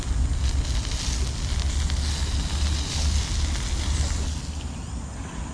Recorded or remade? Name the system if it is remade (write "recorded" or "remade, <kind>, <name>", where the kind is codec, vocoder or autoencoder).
recorded